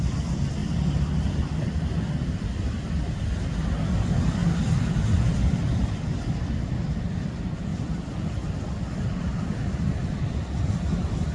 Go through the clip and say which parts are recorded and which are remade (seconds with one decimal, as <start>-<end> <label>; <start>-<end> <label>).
0.0-11.3 recorded